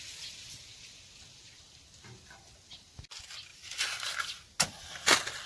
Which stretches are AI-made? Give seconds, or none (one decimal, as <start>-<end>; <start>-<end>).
none